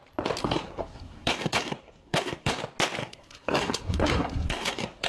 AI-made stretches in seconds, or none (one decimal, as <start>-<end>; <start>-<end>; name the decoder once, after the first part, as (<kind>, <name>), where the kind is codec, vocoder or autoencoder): 0.4-2.6 (codec, SNAC); 3.0-5.1